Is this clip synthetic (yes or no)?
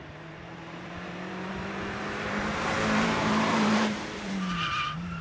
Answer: yes